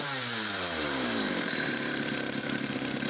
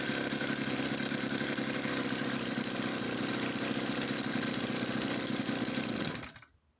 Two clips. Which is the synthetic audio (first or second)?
first